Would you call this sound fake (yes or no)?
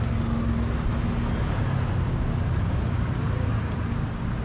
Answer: no